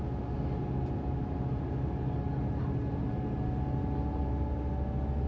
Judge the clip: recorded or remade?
recorded